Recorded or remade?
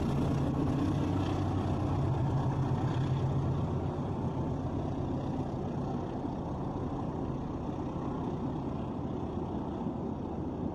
recorded